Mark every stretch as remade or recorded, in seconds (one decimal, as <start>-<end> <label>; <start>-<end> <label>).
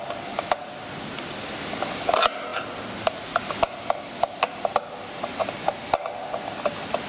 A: 0.0-7.1 recorded